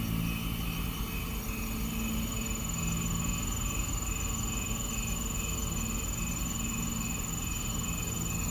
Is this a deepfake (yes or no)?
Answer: no